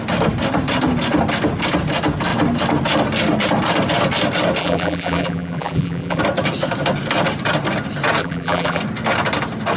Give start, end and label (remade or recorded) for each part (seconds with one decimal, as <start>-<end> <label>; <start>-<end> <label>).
0.0-4.6 recorded; 4.6-6.2 remade; 6.2-8.2 recorded; 8.2-8.8 remade; 8.8-9.8 recorded